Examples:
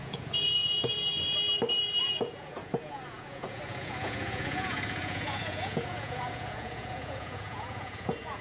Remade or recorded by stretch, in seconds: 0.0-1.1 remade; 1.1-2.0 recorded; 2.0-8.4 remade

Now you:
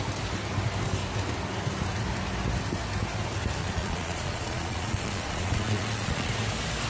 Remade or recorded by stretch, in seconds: 0.0-3.6 recorded; 3.6-6.3 remade; 6.3-6.9 recorded

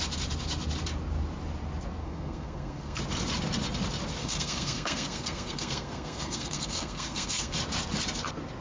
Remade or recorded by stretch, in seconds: 0.0-2.0 recorded; 2.0-3.0 remade; 3.0-4.2 recorded; 4.2-7.6 remade; 7.6-8.6 recorded

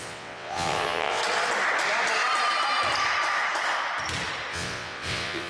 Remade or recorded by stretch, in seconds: 0.0-1.2 remade; 1.2-4.5 recorded; 4.5-5.5 remade

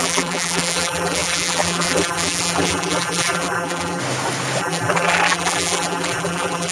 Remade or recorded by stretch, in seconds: 0.0-4.0 remade; 4.0-4.6 recorded; 4.6-6.7 remade

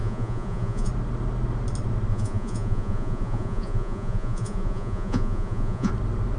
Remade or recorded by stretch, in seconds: 0.0-0.9 remade; 0.9-2.1 recorded; 2.1-5.9 remade; 5.9-6.4 recorded